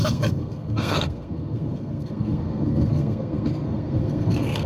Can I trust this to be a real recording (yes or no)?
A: no